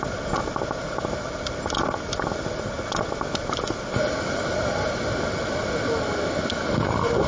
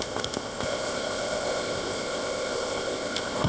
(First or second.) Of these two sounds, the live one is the first